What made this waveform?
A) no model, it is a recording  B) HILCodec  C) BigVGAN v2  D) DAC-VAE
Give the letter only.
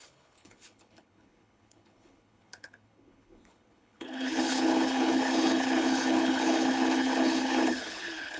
B